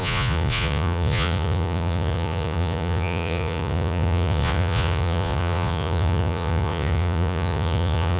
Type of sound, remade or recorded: remade